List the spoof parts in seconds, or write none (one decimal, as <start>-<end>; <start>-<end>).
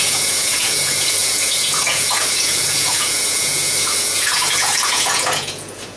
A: 0.0-6.0